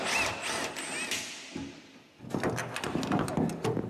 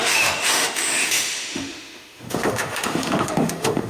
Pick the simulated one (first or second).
second